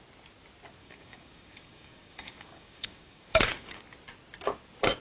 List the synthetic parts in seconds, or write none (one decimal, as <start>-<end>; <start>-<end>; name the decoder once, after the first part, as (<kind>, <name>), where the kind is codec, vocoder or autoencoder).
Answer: 0.8-3.8 (codec, DAC)

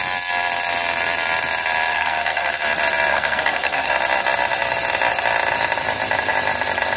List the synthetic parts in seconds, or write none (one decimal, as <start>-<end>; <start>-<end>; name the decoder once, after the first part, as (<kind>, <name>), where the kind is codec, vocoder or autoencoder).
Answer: 1.9-2.5 (codec, SNAC); 3.1-3.9

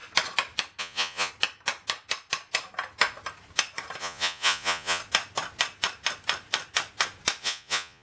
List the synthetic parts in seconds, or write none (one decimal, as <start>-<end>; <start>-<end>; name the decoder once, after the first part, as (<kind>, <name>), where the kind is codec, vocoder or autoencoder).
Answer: 0.8-1.3 (vocoder, Vocos); 4.0-5.0; 7.4-8.0

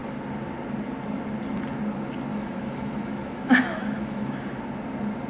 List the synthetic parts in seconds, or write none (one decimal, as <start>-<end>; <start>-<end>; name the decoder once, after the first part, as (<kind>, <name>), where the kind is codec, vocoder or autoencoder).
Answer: 2.3-4.6 (autoencoder, DAC-VAE)

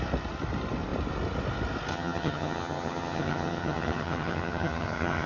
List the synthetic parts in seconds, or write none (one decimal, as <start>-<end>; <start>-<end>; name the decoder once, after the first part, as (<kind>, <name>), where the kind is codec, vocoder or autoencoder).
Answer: 1.9-5.3 (vocoder, HiFi-GAN)

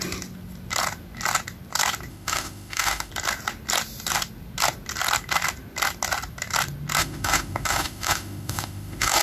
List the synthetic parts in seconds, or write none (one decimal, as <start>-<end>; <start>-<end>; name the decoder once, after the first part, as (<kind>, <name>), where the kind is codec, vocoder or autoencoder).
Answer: 2.1-3.1 (autoencoder, DAC-VAE); 7.0-9.2